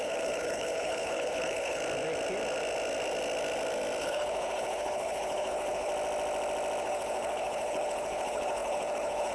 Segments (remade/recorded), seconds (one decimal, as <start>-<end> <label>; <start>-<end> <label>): 0.0-1.8 remade; 1.8-4.0 recorded; 4.0-5.9 remade; 5.9-6.8 recorded; 6.8-9.3 remade